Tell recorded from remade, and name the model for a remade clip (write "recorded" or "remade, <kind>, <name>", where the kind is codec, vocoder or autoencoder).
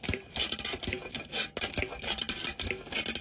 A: remade, vocoder, BigVGAN v2